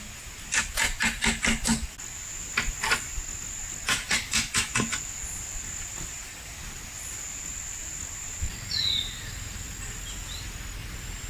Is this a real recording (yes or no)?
yes